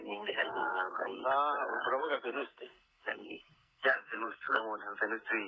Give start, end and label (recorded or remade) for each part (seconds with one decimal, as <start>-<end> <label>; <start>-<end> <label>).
0.0-1.2 remade; 1.2-2.0 recorded; 2.0-4.6 remade; 4.6-5.5 recorded